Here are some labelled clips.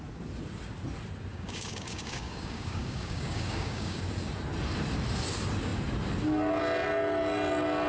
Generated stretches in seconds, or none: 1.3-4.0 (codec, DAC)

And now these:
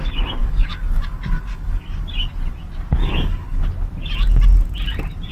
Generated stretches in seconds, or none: 0.4-2.0 (codec, DAC); 3.0-3.6

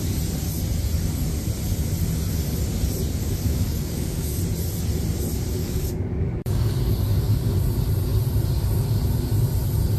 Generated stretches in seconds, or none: 3.2-4.4 (codec, DAC); 5.6-6.8

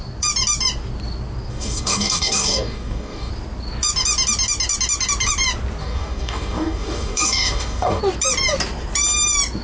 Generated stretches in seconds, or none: 1.5-3.3 (codec, DAC); 5.8-8.0

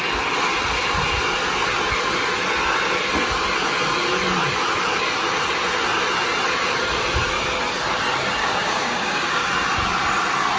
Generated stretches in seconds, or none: 8.4-9.5 (codec, DAC)

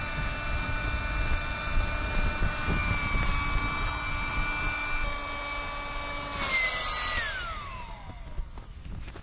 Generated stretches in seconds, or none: none

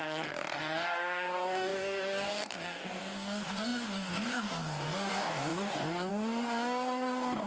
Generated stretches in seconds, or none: 0.0-7.5 (codec, DAC)

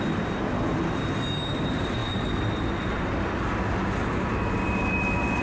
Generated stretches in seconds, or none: none